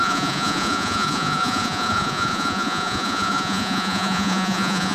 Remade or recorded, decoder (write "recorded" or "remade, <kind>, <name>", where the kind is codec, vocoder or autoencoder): remade, vocoder, Vocos